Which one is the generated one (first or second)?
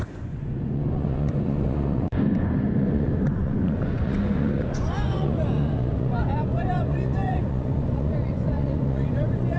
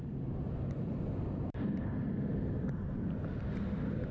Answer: first